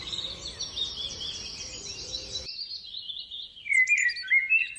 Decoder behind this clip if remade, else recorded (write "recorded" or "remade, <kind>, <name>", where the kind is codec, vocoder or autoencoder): recorded